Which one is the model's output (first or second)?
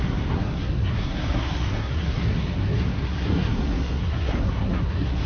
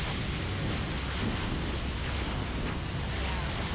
first